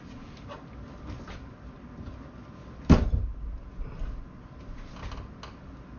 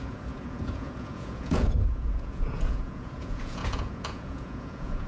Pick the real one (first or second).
first